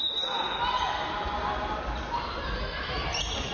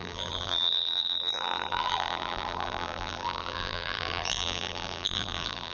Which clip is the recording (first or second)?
first